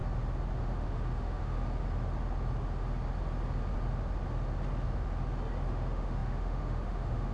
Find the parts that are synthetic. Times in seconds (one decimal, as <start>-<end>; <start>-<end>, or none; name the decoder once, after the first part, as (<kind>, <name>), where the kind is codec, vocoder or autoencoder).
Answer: 0.6-1.5 (autoencoder, DAC-VAE); 5.7-7.3